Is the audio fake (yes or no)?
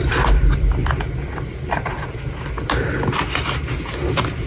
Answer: no